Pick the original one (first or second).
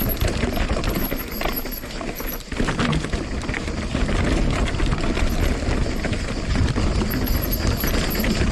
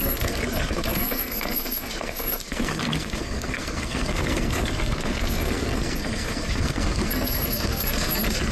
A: first